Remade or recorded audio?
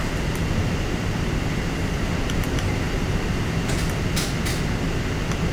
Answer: recorded